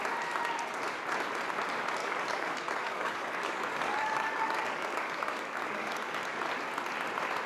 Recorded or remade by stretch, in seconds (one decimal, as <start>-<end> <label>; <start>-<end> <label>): 0.0-2.0 recorded; 2.0-6.5 remade; 6.5-7.5 recorded